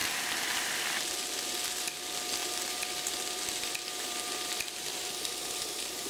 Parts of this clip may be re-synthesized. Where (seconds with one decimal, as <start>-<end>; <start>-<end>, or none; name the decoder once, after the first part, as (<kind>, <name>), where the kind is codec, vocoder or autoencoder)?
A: 2.4-6.1 (vocoder, BigVGAN v2)

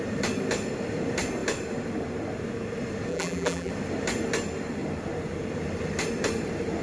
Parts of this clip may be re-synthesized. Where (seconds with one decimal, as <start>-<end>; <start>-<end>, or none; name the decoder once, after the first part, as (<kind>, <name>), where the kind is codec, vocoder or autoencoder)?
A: 3.1-3.7 (vocoder, BigVGAN v2)